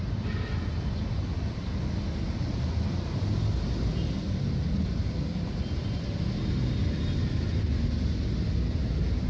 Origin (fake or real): real